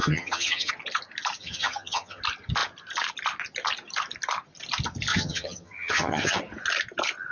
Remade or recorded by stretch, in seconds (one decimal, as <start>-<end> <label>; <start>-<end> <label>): 0.0-0.7 remade; 0.7-1.4 recorded; 1.4-2.2 remade; 2.2-5.1 recorded; 5.1-6.4 remade; 6.4-7.3 recorded